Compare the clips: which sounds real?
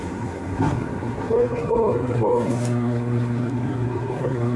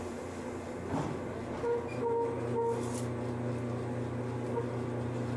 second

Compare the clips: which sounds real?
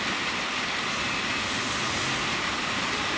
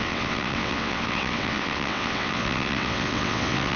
first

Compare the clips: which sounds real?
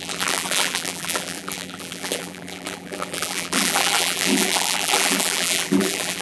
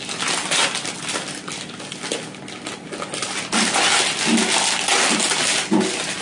second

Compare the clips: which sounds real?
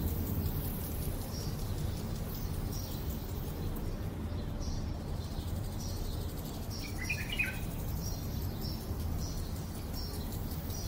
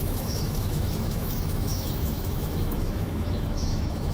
first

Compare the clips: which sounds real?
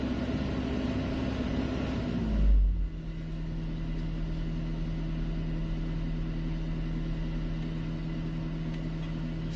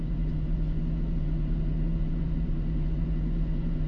first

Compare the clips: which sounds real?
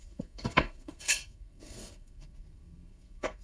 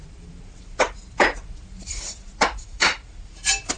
second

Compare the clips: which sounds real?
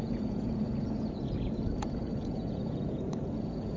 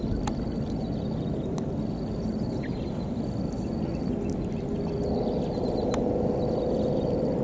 second